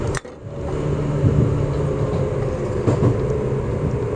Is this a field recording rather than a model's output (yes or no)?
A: yes